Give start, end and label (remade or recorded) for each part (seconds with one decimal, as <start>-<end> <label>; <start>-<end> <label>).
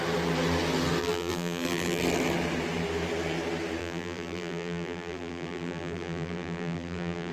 0.0-1.0 recorded; 1.0-2.0 remade; 2.0-3.8 recorded; 3.8-7.3 remade